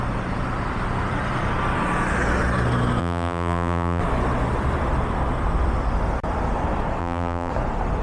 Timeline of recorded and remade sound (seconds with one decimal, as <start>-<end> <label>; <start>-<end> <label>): 0.0-3.0 recorded; 3.0-4.0 remade; 4.0-7.0 recorded; 7.0-7.5 remade; 7.5-8.0 recorded